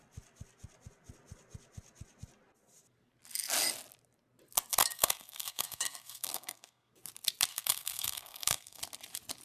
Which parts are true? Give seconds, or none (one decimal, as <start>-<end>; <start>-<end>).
0.0-4.8; 6.9-7.5; 8.8-9.4